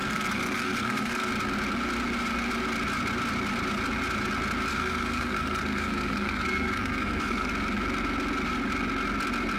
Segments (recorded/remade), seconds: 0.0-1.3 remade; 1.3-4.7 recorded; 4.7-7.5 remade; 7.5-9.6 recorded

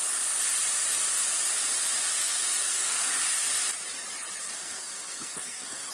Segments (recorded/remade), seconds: 0.0-2.2 recorded; 2.2-3.1 remade; 3.1-4.4 recorded; 4.4-5.9 remade

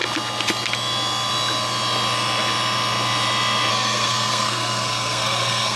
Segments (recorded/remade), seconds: 0.0-3.7 recorded; 3.7-5.8 remade

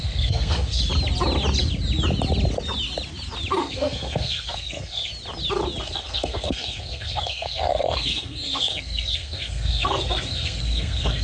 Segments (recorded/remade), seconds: 0.0-0.8 remade; 0.8-3.6 recorded; 3.6-5.1 remade; 5.1-5.8 recorded; 5.8-11.2 remade

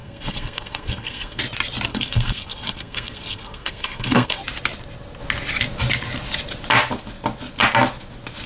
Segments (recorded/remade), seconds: 0.0-1.4 remade; 1.4-1.9 recorded; 1.9-4.4 remade; 4.4-8.5 recorded

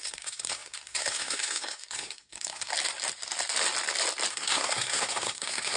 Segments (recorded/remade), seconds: 0.0-2.7 remade; 2.7-4.3 recorded; 4.3-5.8 remade

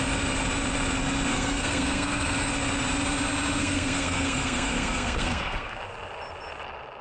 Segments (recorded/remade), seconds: 0.0-1.3 recorded; 1.3-2.5 remade; 2.5-3.6 recorded; 3.6-5.8 remade; 5.8-7.0 recorded

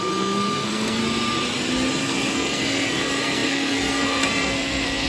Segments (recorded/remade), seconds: 0.0-1.0 remade; 1.0-2.0 recorded; 2.0-5.1 remade